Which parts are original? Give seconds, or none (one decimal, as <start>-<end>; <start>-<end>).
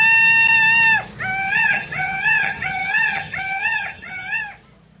0.0-1.4; 4.4-5.0